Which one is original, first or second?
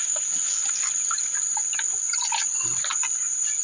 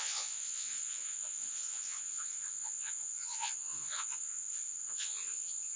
first